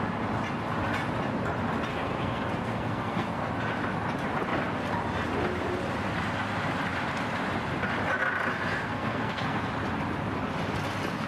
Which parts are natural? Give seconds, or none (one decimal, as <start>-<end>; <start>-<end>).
0.0-1.9; 3.5-8.7; 9.7-11.3